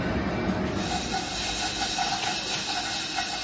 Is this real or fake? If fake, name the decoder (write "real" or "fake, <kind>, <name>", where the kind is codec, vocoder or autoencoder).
real